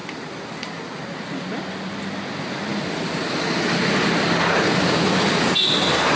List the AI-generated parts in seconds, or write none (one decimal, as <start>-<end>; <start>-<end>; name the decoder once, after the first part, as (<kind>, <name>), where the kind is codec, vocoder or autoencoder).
none